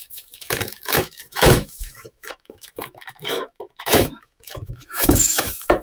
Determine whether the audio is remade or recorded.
remade